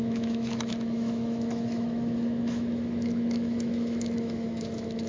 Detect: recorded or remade remade